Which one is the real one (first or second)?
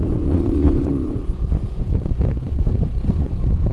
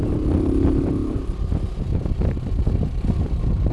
second